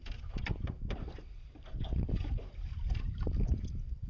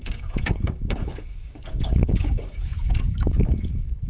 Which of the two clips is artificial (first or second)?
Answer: second